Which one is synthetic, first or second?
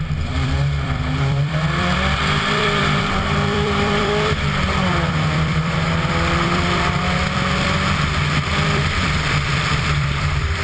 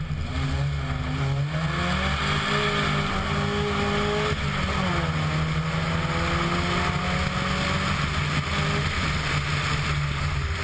first